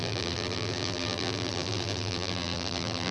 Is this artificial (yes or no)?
yes